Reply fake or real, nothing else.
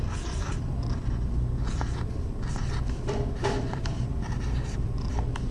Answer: fake